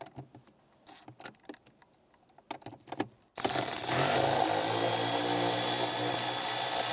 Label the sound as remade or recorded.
recorded